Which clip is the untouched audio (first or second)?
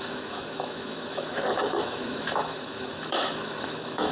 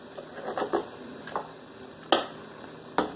second